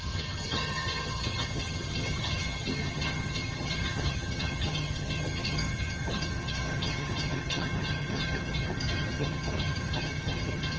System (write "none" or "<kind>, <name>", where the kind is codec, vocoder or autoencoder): vocoder, HiFi-GAN